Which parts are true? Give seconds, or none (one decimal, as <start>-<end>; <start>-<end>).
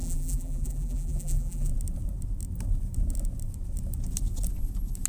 1.7-5.1